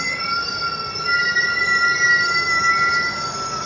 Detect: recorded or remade recorded